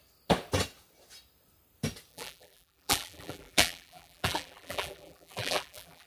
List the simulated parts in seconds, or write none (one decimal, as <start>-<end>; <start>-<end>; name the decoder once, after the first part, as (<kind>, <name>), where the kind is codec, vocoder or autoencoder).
2.1-6.1 (vocoder, BigVGAN v2)